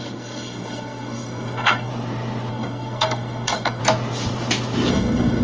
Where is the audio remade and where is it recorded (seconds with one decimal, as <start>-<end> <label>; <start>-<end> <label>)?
0.0-1.9 remade; 1.9-2.5 recorded; 2.5-3.8 remade; 3.8-4.9 recorded; 4.9-5.4 remade

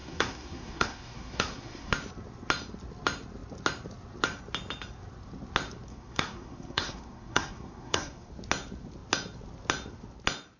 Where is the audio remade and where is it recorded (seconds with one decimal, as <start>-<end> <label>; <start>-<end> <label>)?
0.0-1.9 remade; 1.9-5.9 recorded; 5.9-8.3 remade; 8.3-10.6 recorded

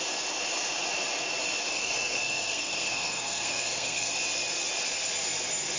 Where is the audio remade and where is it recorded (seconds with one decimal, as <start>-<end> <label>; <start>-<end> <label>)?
0.0-1.7 recorded; 1.7-4.1 remade; 4.1-5.8 recorded

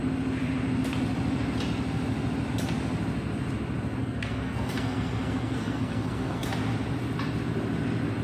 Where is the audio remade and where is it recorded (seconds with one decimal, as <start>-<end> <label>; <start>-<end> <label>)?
0.0-4.0 recorded; 4.0-6.5 remade; 6.5-8.2 recorded